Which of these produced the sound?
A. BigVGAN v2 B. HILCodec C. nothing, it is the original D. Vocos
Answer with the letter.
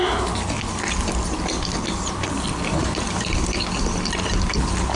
C